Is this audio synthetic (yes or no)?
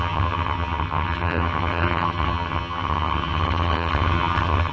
yes